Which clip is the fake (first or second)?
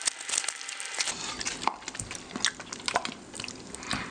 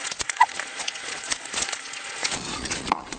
second